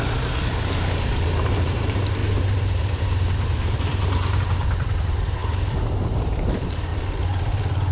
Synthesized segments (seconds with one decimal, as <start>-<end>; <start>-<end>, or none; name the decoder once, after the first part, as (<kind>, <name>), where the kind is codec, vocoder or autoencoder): 0.0-6.9 (vocoder, BigVGAN v2)